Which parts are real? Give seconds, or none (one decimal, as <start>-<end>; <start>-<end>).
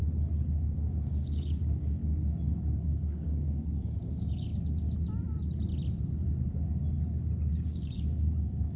0.0-0.6; 2.0-2.8; 4.5-7.5